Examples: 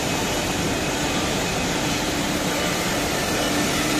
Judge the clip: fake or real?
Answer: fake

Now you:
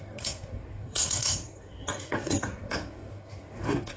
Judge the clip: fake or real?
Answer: fake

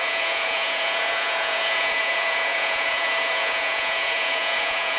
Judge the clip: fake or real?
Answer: fake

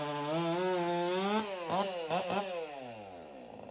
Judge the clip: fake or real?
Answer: real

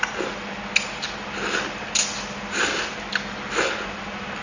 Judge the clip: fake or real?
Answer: real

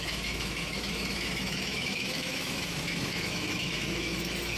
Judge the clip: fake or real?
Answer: fake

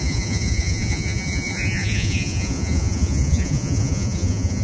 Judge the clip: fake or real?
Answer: fake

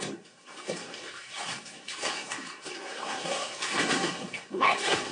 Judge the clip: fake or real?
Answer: fake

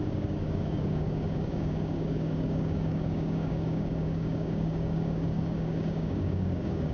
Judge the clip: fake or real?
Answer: fake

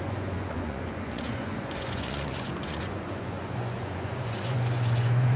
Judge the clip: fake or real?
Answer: fake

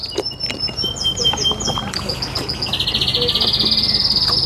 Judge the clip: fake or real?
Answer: real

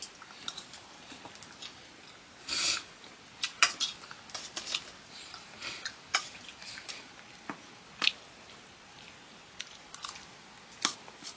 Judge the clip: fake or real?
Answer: real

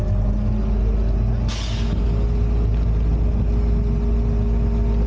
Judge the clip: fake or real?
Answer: real